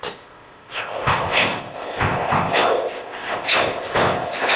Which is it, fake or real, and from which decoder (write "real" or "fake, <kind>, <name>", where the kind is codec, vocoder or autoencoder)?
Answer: fake, codec, ZipCodec